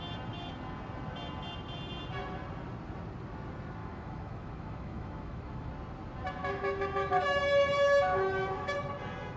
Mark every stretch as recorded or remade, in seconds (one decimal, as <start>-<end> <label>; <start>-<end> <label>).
0.0-3.8 recorded; 3.8-5.7 remade; 5.7-6.4 recorded; 6.4-8.9 remade; 8.9-9.4 recorded